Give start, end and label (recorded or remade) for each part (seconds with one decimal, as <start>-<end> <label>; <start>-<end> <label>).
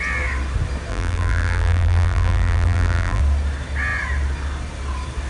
0.0-0.9 recorded; 0.9-3.2 remade; 3.2-5.3 recorded